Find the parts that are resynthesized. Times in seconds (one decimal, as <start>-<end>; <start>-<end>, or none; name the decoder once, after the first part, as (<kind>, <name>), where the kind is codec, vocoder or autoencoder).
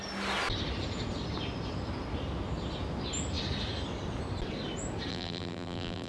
5.1-6.1 (vocoder, BigVGAN v2)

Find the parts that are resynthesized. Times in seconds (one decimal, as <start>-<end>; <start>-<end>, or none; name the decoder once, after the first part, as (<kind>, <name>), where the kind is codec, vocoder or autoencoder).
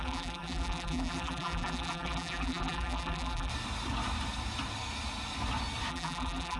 0.0-3.5 (vocoder, BigVGAN v2); 5.9-6.6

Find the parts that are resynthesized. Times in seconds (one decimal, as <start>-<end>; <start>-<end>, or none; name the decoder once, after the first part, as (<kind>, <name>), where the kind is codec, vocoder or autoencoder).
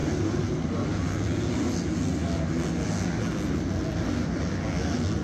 none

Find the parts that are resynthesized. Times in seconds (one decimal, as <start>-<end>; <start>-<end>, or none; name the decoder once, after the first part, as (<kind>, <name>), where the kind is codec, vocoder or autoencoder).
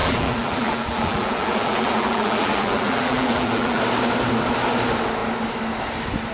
0.0-3.8 (vocoder, BigVGAN v2)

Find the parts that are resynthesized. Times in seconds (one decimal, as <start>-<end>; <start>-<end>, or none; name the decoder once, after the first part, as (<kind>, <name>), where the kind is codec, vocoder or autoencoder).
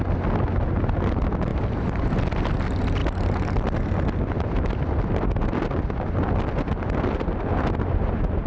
1.5-2.2 (vocoder, BigVGAN v2)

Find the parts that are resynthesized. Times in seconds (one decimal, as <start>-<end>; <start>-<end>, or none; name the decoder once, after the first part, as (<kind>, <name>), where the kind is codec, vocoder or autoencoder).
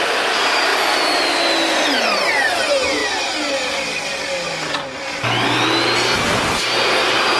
0.0-3.0 (vocoder, BigVGAN v2)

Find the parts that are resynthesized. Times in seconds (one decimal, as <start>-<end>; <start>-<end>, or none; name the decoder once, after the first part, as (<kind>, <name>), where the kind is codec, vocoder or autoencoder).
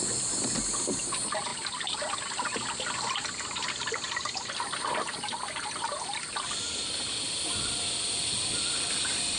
none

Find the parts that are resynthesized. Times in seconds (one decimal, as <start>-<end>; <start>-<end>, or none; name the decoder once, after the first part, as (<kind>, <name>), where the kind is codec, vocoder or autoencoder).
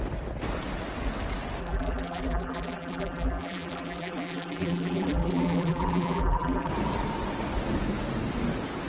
1.6-6.7 (vocoder, BigVGAN v2)